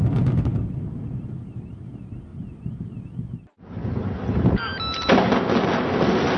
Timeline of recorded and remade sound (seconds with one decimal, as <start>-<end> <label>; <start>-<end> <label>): 0.0-2.3 recorded; 2.3-3.0 remade; 3.0-6.4 recorded